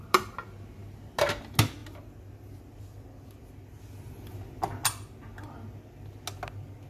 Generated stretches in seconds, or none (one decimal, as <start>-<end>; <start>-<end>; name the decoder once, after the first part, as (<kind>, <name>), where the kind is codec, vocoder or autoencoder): none